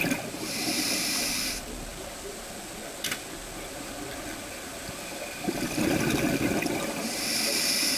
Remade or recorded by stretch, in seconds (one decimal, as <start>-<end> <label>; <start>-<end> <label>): 0.0-8.0 recorded